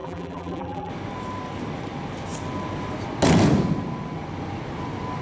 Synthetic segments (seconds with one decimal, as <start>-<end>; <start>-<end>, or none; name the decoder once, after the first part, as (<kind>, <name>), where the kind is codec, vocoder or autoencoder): 0.0-0.9 (vocoder, BigVGAN v2)